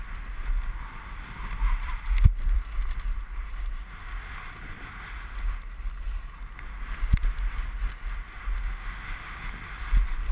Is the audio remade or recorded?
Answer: recorded